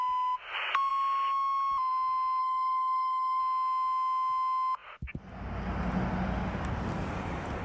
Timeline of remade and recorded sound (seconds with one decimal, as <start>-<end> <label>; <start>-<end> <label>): 0.0-2.4 recorded; 2.4-3.4 remade; 3.4-7.6 recorded